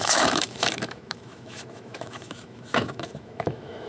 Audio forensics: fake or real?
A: fake